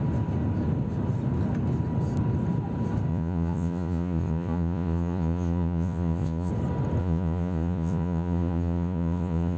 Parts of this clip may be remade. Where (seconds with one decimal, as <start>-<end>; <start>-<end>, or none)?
3.1-6.5; 7.0-9.6